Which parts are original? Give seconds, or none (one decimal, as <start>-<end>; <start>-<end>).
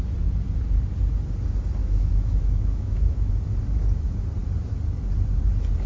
0.0-1.8; 3.3-5.9